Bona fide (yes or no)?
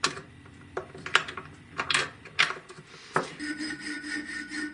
no